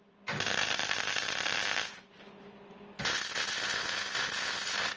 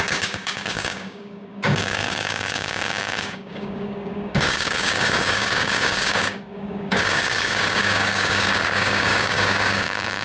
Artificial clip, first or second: second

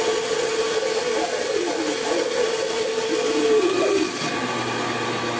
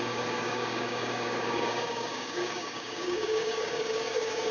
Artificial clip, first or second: second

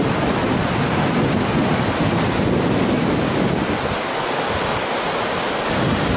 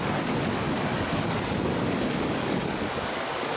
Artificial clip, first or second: second